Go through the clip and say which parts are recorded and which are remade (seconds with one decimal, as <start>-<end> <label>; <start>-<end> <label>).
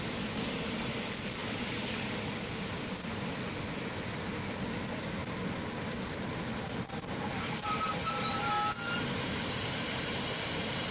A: 0.0-1.4 recorded; 1.4-2.2 remade; 2.2-10.9 recorded